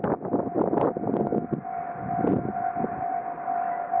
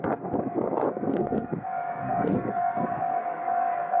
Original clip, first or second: first